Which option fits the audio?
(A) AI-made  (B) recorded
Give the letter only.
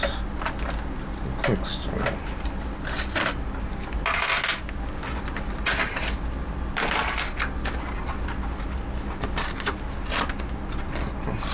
B